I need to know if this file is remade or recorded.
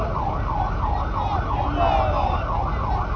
recorded